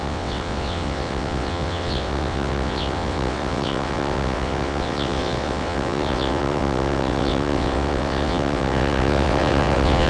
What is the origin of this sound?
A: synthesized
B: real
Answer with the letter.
A